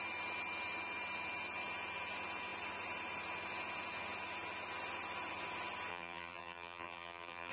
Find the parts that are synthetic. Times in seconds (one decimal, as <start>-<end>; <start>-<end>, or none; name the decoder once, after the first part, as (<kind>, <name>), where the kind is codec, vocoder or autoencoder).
5.9-7.5 (vocoder, BigVGAN v2)